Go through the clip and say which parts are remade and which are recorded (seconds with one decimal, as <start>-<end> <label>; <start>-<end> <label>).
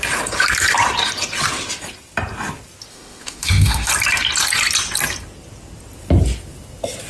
0.0-2.9 recorded; 2.9-3.9 remade; 3.9-7.1 recorded